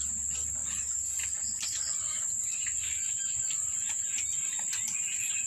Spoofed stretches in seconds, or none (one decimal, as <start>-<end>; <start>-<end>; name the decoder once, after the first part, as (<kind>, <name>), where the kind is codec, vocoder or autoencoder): none